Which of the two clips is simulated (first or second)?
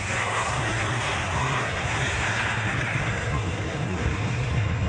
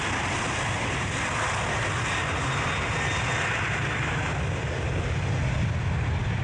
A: first